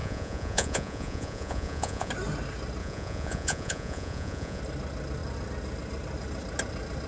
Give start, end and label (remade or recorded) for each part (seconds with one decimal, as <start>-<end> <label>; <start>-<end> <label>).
0.0-2.1 remade; 2.1-2.8 recorded; 2.8-4.6 remade; 4.6-7.1 recorded